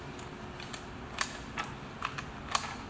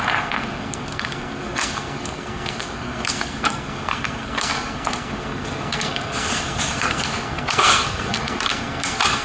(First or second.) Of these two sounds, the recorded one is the first